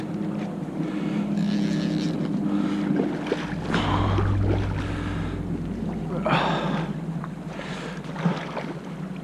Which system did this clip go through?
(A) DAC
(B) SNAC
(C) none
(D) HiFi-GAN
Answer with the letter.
C